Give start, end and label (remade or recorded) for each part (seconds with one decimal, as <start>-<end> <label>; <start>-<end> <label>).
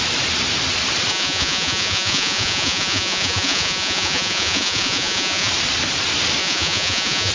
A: 0.0-1.1 recorded; 1.1-5.5 remade; 5.5-6.4 recorded; 6.4-7.3 remade